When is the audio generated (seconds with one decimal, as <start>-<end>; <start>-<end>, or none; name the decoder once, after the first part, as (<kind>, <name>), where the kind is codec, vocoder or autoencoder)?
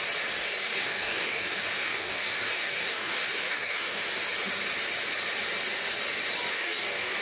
0.4-4.0 (codec, DAC); 6.5-7.2